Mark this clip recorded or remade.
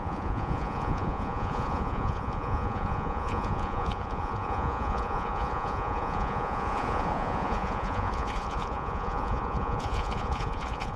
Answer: remade